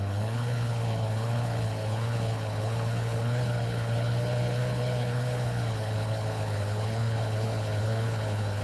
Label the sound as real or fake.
fake